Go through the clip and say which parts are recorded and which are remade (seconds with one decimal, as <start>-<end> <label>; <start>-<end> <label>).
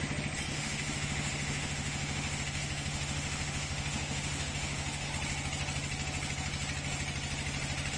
0.0-0.5 recorded; 0.5-5.1 remade; 5.1-8.0 recorded